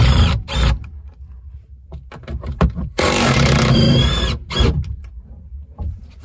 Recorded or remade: remade